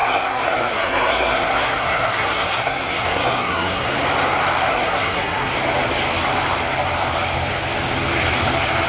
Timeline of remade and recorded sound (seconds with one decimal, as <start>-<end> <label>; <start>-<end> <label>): 0.0-3.9 remade; 3.9-4.7 recorded; 4.7-5.5 remade; 5.5-8.9 recorded